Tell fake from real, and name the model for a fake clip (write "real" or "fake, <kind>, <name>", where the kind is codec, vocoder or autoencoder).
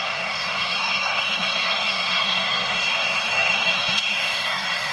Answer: fake, codec, SNAC